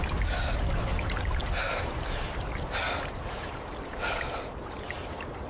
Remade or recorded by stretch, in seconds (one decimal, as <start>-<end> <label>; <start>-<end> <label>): 0.0-5.5 recorded